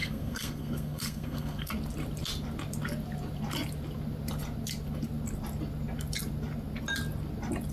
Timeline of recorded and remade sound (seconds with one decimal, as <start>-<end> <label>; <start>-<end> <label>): 0.0-1.7 remade; 1.7-7.7 recorded